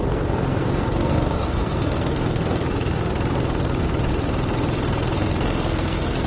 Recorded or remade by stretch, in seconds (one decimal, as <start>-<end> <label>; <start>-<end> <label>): 0.0-2.6 remade; 2.6-5.2 recorded; 5.2-6.3 remade